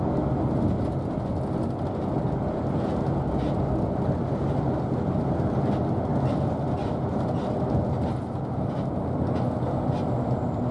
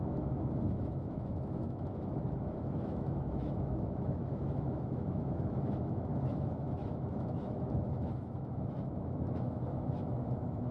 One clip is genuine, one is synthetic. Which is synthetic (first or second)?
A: second